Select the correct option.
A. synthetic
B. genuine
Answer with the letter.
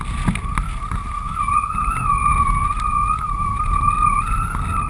B